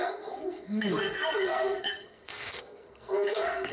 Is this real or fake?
fake